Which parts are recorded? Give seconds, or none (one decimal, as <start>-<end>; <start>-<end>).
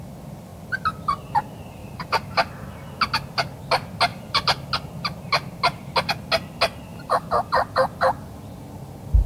0.0-1.8; 2.5-4.1; 4.7-6.9; 7.5-9.3